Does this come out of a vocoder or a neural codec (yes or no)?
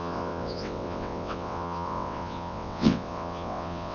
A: yes